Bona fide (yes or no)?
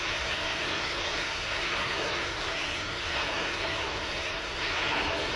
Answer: no